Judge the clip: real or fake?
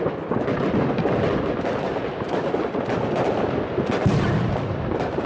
real